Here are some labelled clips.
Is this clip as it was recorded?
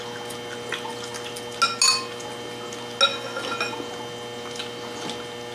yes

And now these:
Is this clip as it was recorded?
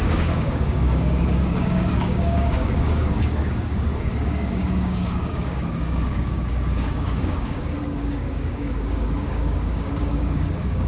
no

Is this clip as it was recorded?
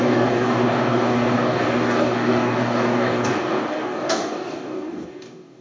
no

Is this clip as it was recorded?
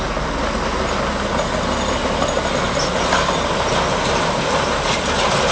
yes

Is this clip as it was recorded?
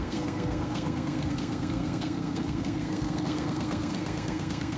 no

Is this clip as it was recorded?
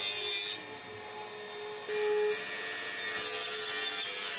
yes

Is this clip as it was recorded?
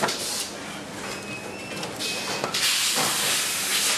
yes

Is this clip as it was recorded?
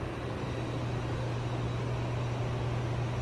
yes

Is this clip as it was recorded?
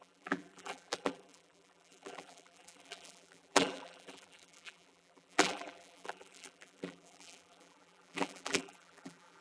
no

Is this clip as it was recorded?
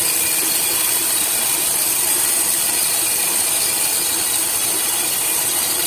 yes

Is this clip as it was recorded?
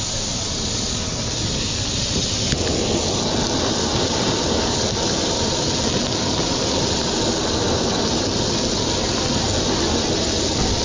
yes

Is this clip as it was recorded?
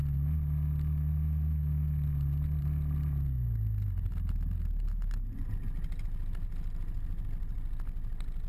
yes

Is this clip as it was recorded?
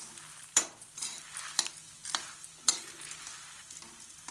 yes